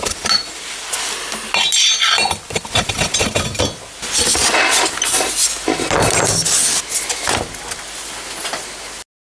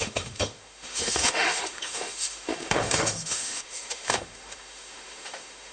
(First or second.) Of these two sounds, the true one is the first